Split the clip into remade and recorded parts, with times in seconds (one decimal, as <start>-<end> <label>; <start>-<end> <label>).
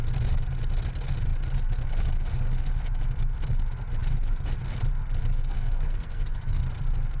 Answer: 0.0-5.5 recorded; 5.5-6.6 remade; 6.6-7.2 recorded